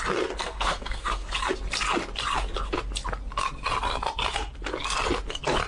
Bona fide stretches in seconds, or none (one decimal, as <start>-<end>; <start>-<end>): 0.0-0.4; 1.3-5.7